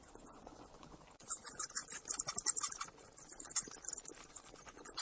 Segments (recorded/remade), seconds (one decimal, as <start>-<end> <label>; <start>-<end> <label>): 0.0-1.8 remade; 1.8-4.3 recorded; 4.3-5.0 remade